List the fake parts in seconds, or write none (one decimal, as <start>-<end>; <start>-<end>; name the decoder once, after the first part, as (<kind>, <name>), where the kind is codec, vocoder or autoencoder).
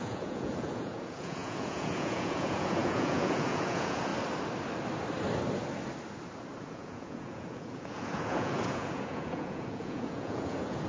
0.0-4.1 (vocoder, Vocos); 6.6-10.9